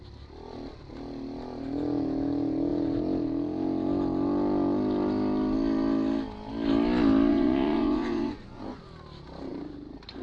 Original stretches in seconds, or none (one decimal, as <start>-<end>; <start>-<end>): 0.0-7.3; 8.8-10.2